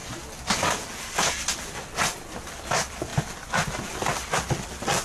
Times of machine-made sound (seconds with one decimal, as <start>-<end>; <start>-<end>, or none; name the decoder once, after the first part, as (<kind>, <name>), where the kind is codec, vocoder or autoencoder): none